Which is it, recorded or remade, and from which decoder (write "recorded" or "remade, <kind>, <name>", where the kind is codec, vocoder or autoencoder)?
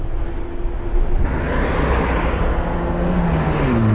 recorded